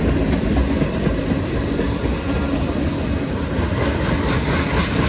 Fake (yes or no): no